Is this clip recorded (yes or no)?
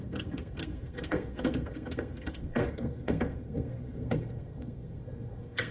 no